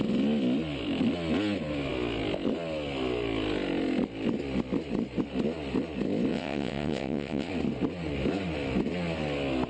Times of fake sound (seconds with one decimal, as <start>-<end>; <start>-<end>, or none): 6.3-7.5